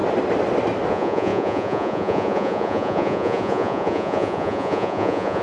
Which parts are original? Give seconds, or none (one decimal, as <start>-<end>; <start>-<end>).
0.0-0.9